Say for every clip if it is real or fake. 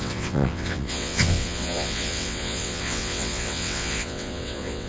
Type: fake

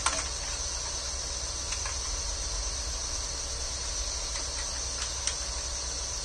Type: real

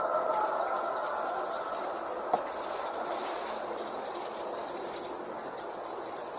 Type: real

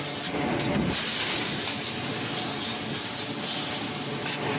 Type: real